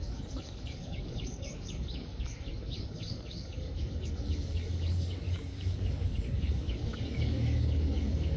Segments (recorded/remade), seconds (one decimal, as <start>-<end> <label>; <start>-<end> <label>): 0.0-8.4 remade

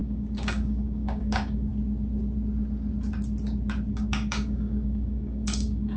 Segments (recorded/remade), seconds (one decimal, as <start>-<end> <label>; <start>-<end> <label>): 0.0-1.7 remade; 1.7-3.9 recorded; 3.9-6.0 remade